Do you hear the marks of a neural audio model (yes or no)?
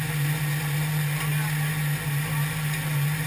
no